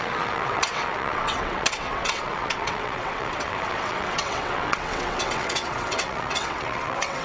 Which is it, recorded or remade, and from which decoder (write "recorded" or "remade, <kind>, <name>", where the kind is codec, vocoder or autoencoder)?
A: remade, vocoder, WaveNeXt